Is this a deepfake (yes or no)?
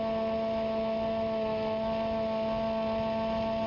no